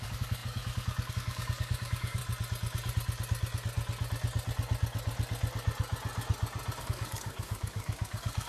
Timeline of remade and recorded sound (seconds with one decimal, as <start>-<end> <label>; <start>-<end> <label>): 0.0-2.2 remade; 2.2-6.8 recorded; 6.8-8.5 remade